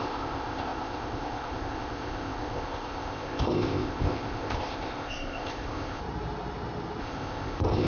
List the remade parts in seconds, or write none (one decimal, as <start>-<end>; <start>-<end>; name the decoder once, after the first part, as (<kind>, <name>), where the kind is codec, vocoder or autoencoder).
0.0-6.0 (codec, ZipCodec); 7.0-7.9